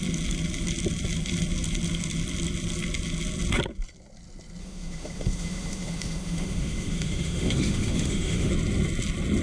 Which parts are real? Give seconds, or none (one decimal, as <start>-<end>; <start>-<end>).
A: 0.0-4.6; 8.5-9.4